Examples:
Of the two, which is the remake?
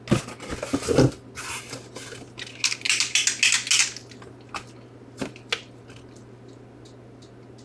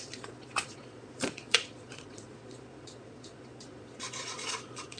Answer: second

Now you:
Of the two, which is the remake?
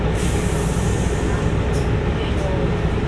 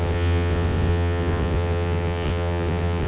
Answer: second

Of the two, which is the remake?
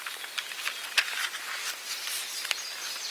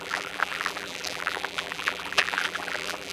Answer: second